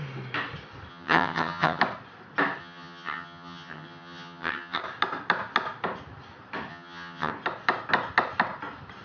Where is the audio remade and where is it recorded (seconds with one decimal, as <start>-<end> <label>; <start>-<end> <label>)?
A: 0.0-0.9 recorded; 0.9-1.8 remade; 1.8-2.6 recorded; 2.6-4.8 remade; 4.8-6.7 recorded; 6.7-7.3 remade; 7.3-9.0 recorded